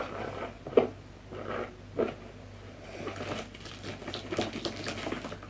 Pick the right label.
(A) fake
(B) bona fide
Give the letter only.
B